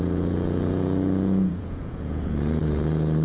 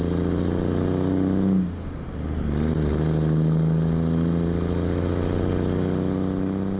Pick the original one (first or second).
second